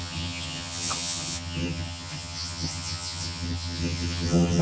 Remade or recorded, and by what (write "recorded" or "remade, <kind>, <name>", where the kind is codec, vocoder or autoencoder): remade, vocoder, HiFi-GAN